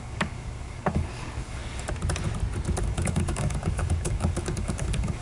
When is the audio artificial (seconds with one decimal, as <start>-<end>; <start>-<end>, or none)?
0.0-1.6; 2.8-5.2